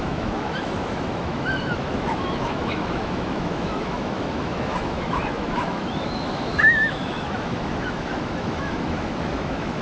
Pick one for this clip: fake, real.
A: fake